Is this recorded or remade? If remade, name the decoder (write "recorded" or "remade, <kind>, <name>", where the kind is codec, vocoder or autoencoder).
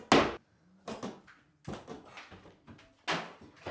recorded